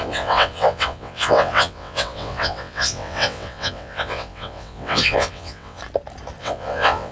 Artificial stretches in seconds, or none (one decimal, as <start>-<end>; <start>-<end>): 0.0-5.8; 6.4-7.1